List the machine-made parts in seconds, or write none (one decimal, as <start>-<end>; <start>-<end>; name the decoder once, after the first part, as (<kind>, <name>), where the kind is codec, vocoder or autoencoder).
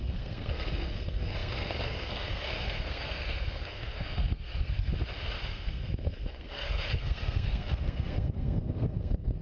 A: 0.0-4.9 (codec, SNAC); 5.4-9.4